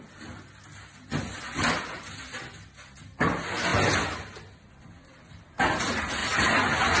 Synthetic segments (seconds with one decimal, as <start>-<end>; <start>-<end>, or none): none